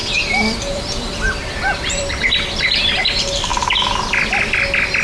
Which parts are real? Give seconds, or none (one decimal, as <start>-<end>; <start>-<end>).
3.0-3.5; 4.3-5.0